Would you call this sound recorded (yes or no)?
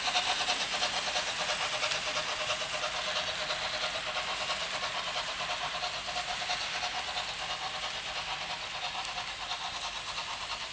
yes